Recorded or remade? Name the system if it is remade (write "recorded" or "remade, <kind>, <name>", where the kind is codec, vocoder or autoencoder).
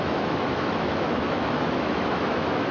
remade, autoencoder, DAC-VAE